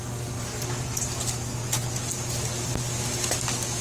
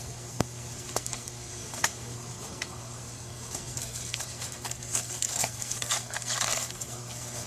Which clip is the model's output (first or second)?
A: second